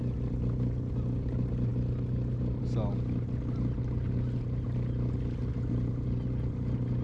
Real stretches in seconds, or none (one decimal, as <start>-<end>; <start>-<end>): 0.0-7.0